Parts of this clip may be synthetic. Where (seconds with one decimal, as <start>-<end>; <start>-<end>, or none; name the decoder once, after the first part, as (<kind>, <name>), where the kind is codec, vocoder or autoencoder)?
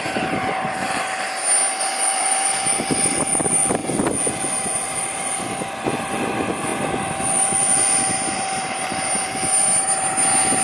0.0-10.6 (vocoder, BigVGAN v2)